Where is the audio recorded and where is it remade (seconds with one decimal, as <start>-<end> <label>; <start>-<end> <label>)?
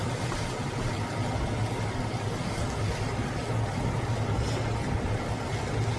0.0-6.0 recorded